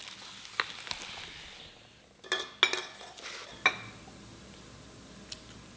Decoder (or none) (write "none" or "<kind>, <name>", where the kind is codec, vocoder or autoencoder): none